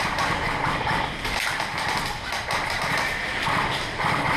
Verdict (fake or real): real